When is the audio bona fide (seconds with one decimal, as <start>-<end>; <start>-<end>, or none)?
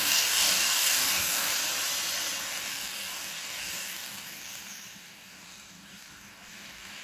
1.6-2.4